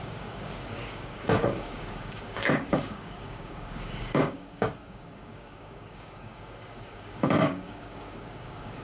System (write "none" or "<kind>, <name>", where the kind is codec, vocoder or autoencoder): codec, DAC